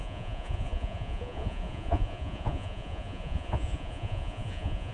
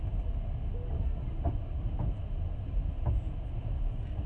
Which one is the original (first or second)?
second